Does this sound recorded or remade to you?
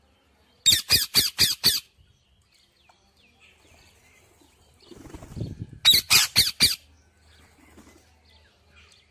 recorded